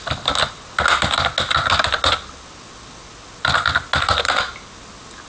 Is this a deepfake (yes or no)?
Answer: no